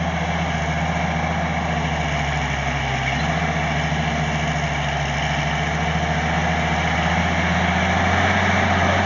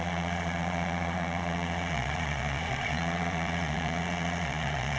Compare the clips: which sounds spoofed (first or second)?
second